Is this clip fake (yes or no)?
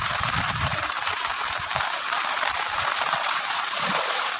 yes